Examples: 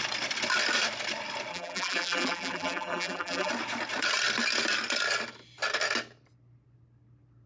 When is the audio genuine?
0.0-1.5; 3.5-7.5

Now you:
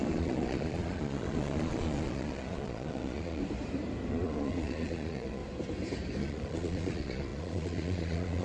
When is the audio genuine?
3.4-4.1; 5.4-6.2

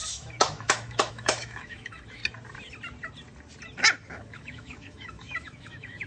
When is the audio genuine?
2.2-4.1

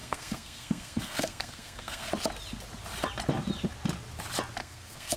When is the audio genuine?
2.1-4.6